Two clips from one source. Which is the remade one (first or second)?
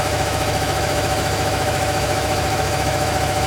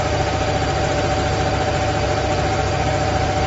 first